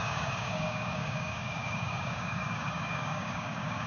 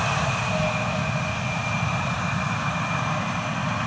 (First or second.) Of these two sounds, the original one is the second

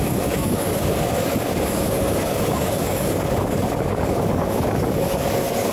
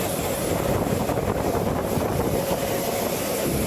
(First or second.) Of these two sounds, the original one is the second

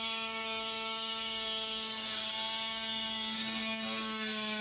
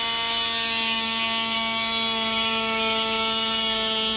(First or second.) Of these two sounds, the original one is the second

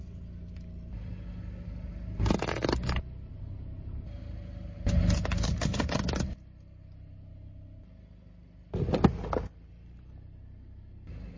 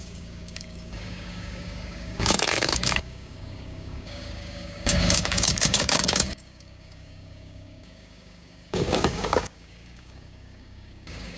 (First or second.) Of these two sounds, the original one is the first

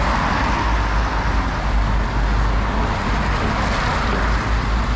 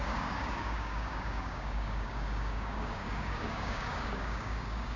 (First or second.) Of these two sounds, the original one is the first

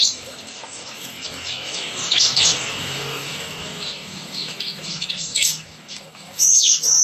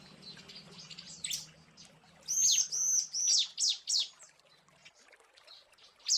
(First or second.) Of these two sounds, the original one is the second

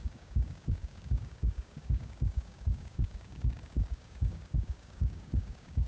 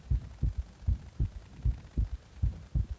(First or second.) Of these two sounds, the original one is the second